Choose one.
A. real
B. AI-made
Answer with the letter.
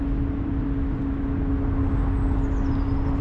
A